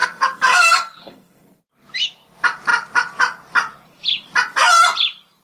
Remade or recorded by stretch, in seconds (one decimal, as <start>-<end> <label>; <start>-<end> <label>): 0.0-1.6 remade; 1.6-5.4 recorded